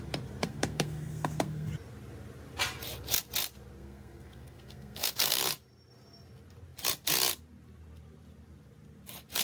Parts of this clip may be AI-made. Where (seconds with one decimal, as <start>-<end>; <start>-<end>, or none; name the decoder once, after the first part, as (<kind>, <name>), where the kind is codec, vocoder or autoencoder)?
0.4-1.7 (codec, SNAC); 3.8-5.4